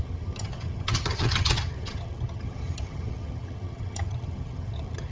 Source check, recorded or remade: remade